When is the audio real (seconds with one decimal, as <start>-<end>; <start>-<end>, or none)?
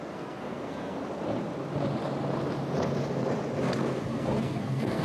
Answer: 1.0-4.0